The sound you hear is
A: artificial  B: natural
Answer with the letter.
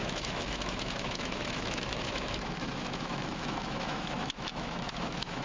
A